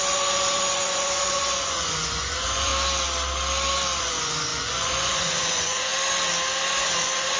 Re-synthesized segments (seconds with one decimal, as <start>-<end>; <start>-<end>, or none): 0.0-2.7; 4.0-5.9; 6.7-7.4